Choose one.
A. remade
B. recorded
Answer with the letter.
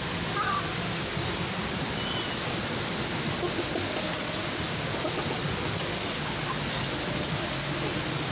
B